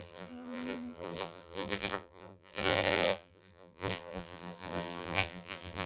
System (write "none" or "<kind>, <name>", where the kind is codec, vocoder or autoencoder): vocoder, BigVGAN v2